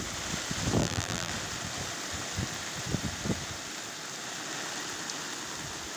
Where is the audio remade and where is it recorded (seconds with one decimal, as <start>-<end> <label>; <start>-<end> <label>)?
0.0-0.8 recorded; 0.8-1.3 remade; 1.3-6.0 recorded